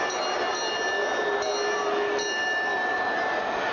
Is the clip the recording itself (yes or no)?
yes